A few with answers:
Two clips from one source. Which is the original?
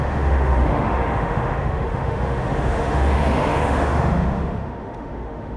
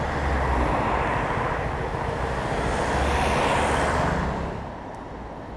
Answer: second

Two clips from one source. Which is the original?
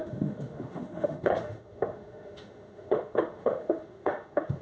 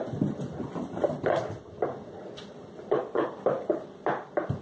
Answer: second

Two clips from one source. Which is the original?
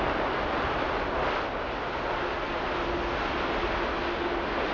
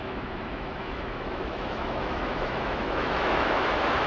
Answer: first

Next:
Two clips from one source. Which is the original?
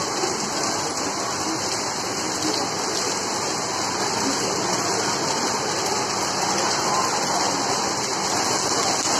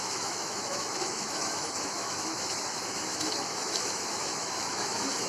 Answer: first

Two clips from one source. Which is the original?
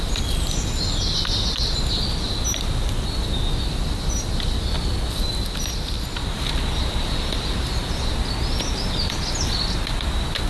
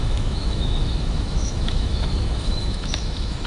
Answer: first